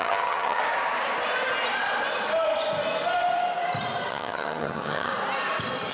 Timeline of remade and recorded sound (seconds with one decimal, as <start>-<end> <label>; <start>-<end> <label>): 0.0-0.6 remade; 0.6-4.1 recorded; 4.1-5.1 remade; 5.1-5.9 recorded